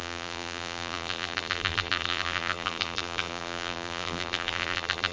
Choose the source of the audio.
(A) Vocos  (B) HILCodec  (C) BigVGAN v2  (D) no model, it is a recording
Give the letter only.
C